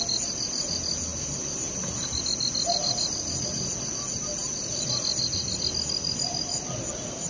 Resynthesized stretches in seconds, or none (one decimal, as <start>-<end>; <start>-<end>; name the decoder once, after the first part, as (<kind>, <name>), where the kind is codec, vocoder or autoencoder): none